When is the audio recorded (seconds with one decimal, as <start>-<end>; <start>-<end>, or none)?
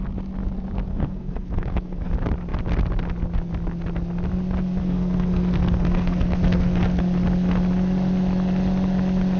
0.0-0.9; 2.1-4.8; 7.0-9.4